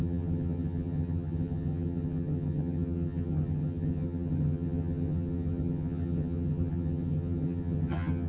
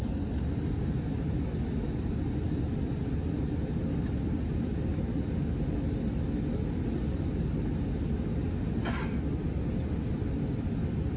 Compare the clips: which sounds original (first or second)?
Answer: second